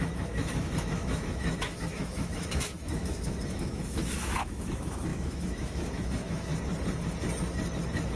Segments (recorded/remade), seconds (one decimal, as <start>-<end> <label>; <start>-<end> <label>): 0.0-6.5 remade; 6.5-8.2 recorded